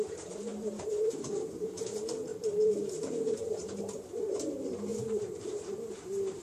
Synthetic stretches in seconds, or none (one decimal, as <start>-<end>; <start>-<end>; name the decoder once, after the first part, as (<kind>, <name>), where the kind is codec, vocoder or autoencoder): 0.0-2.3 (vocoder, BigVGAN v2); 2.9-6.4